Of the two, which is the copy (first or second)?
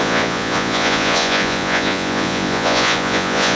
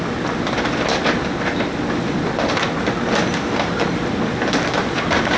first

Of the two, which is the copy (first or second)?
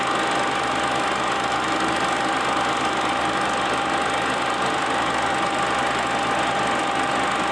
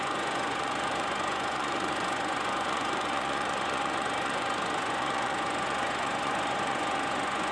second